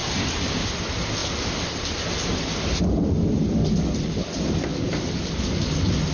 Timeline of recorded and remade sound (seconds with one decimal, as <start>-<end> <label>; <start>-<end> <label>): 0.0-6.1 recorded